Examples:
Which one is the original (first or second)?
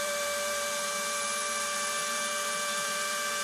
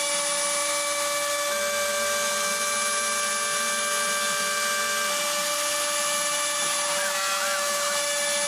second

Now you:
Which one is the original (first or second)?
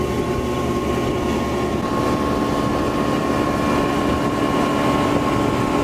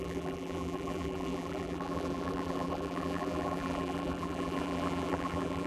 first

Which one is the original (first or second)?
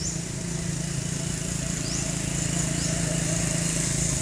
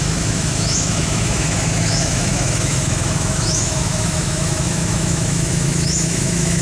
first